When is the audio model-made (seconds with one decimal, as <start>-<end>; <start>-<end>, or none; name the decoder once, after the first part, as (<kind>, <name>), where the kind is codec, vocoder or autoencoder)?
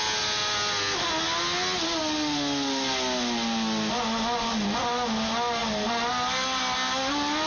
none